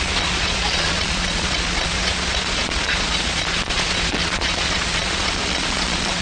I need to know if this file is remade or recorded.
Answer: remade